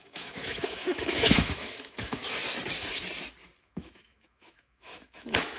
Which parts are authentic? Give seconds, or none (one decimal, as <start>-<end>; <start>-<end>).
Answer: 2.2-3.6